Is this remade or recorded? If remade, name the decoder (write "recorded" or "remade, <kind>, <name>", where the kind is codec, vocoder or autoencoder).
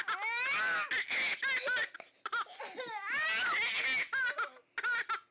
recorded